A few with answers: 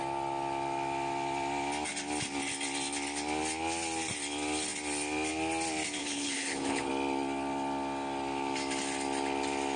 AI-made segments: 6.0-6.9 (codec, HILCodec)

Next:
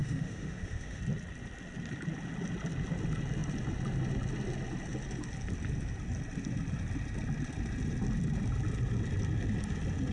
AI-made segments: 0.0-1.0 (autoencoder, DAC-VAE)

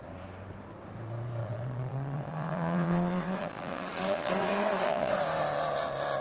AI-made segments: 1.4-5.1 (vocoder, Vocos)